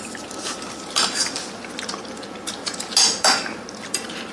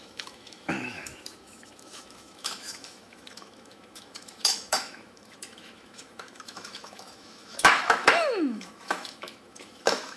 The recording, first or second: first